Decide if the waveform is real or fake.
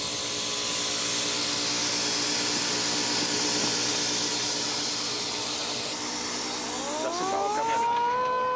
real